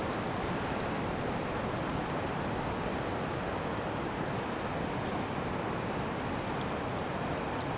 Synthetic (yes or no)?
no